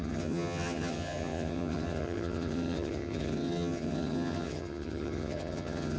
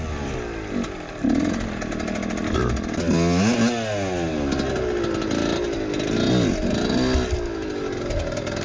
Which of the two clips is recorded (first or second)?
second